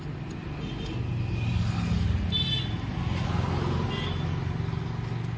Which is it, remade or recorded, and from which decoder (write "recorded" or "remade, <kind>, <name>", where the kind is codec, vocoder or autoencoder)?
recorded